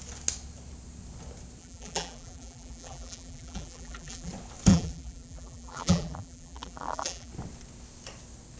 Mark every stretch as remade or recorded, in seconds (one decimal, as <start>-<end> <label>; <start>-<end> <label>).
0.0-1.6 recorded; 1.6-4.3 remade; 4.3-4.7 recorded; 4.7-7.3 remade; 7.3-8.6 recorded